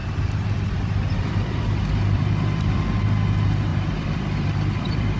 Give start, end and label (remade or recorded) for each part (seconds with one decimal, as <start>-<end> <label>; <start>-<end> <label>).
0.0-2.8 remade; 2.8-3.7 recorded; 3.7-5.2 remade